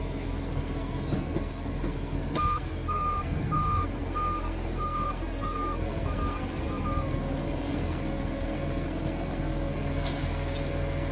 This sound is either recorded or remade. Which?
remade